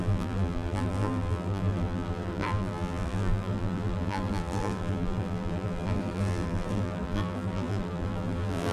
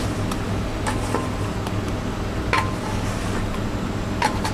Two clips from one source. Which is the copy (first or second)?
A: first